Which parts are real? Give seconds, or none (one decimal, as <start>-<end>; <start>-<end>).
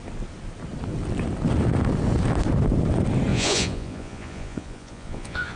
0.0-3.3